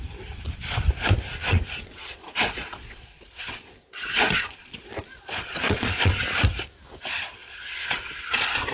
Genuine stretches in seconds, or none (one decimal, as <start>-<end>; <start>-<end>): 0.0-1.5; 6.2-7.4